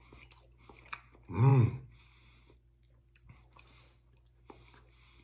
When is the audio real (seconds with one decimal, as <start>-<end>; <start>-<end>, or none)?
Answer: 0.0-5.2